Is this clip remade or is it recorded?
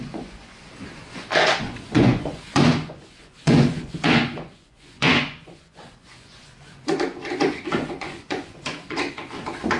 remade